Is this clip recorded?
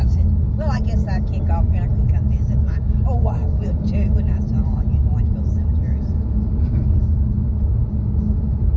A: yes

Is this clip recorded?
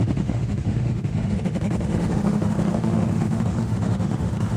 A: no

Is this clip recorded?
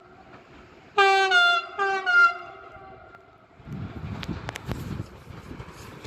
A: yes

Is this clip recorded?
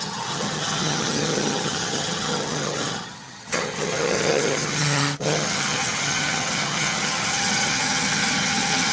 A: no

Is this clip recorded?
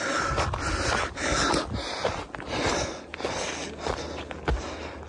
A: yes